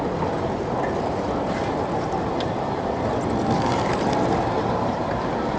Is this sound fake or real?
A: real